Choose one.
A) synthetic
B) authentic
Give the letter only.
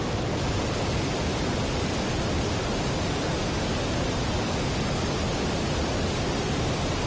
B